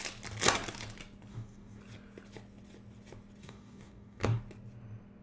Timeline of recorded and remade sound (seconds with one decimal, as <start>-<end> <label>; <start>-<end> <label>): 0.0-1.3 recorded; 1.3-1.8 remade; 1.8-3.4 recorded; 3.4-4.4 remade; 4.4-5.2 recorded